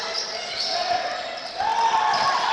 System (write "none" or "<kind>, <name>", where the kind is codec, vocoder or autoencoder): none